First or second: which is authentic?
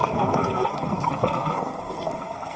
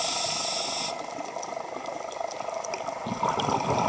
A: second